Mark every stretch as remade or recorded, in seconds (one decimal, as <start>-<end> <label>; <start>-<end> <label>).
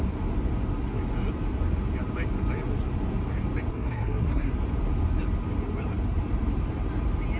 0.0-3.7 recorded; 3.7-4.5 remade; 4.5-7.4 recorded